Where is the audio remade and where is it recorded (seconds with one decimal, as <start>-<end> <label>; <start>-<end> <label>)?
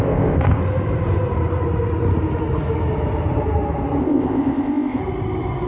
0.0-0.6 remade; 0.6-4.0 recorded; 4.0-5.0 remade; 5.0-5.7 recorded